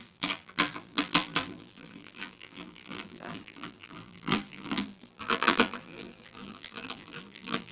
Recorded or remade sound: remade